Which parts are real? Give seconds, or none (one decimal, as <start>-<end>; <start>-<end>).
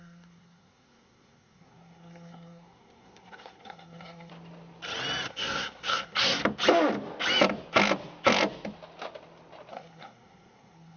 4.3-5.3; 6.4-9.7